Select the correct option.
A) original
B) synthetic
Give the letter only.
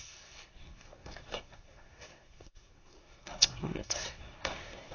B